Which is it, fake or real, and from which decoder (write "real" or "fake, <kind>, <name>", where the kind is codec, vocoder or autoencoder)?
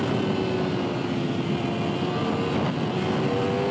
real